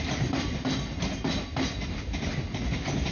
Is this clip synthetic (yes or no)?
no